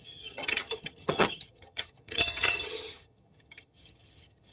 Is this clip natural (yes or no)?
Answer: no